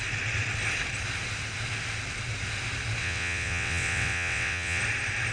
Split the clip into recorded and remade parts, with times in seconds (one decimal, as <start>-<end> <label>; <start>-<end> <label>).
0.0-3.0 recorded; 3.0-4.8 remade; 4.8-5.3 recorded